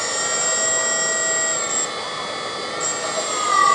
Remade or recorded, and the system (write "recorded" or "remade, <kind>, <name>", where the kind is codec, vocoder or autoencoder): recorded